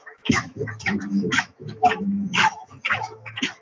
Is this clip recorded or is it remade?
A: remade